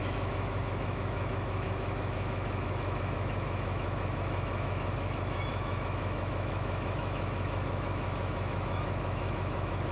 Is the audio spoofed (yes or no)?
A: yes